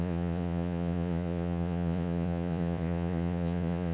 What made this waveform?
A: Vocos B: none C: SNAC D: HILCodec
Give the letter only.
A